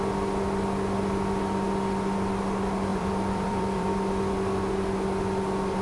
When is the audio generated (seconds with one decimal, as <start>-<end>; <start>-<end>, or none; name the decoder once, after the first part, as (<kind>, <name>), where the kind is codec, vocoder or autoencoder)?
2.9-3.9 (vocoder, BigVGAN v2)